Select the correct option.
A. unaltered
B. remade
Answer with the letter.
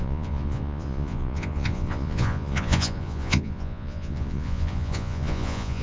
B